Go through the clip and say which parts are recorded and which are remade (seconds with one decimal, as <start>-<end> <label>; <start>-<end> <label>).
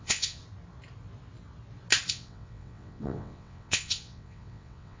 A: 0.0-0.4 remade; 0.4-2.1 recorded; 2.1-5.0 remade